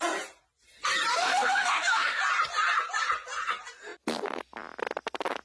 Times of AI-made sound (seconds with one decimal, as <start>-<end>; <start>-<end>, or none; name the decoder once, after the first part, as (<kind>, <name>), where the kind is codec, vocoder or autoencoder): 1.1-2.2 (autoencoder, DAC-VAE)